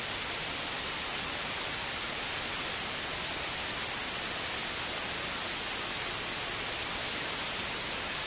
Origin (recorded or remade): recorded